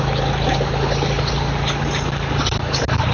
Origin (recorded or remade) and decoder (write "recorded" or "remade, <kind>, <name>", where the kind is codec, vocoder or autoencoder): recorded